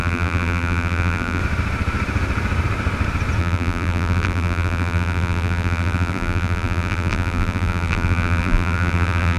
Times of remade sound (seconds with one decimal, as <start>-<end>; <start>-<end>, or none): 0.0-1.4; 3.4-9.4